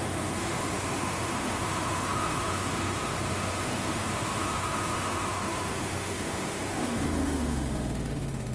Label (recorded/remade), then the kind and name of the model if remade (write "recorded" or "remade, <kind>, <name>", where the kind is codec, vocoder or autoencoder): remade, autoencoder, DAC-VAE